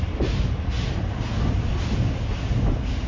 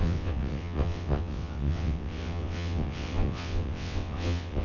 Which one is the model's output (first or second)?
second